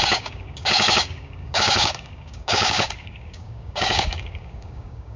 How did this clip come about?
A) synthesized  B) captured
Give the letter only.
A